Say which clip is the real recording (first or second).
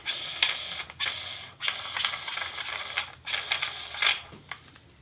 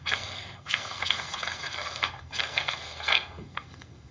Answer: first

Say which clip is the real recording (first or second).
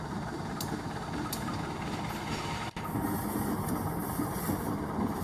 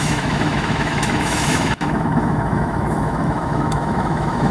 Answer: first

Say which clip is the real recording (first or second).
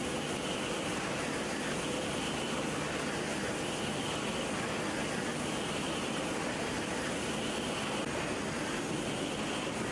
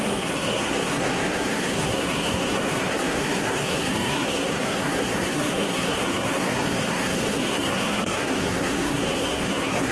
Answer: first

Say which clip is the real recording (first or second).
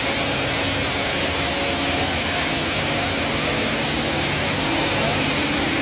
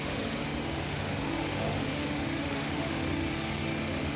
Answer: first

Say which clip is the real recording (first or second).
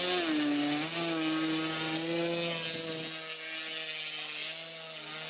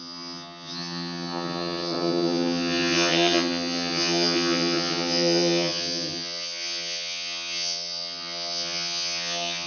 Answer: first